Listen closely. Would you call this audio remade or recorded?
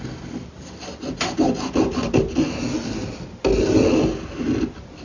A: recorded